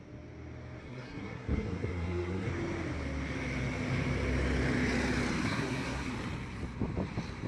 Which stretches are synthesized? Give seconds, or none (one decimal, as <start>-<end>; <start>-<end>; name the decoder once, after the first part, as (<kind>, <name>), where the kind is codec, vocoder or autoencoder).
0.8-2.5 (codec, SNAC); 5.4-6.1